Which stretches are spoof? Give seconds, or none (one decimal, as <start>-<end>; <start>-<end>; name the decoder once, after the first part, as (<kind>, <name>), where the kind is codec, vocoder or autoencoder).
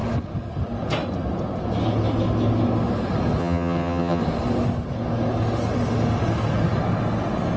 3.4-4.2 (vocoder, HiFi-GAN)